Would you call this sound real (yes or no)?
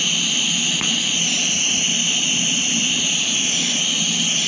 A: yes